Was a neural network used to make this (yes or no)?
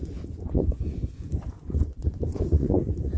yes